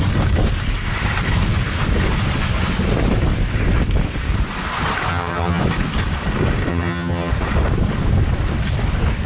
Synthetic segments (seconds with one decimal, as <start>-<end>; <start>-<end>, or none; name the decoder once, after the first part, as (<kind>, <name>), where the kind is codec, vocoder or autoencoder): 5.1-5.6 (vocoder, HiFi-GAN); 6.7-7.3